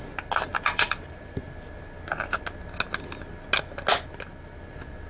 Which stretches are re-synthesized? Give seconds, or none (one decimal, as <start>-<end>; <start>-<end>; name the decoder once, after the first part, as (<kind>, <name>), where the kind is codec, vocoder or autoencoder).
0.5-1.5 (vocoder, BigVGAN v2)